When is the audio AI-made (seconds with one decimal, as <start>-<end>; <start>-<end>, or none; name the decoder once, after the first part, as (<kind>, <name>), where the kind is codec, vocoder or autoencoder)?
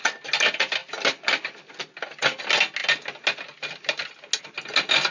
none